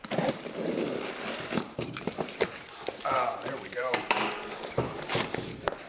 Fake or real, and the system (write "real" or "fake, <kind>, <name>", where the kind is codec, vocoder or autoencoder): fake, vocoder, BigVGAN v2